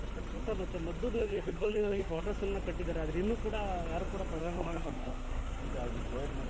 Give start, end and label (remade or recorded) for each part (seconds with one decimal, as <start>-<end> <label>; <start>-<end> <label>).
0.0-1.2 recorded; 1.2-2.2 remade; 2.2-4.4 recorded; 4.4-5.6 remade; 5.6-6.5 recorded